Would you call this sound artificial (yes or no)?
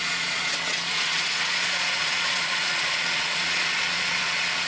yes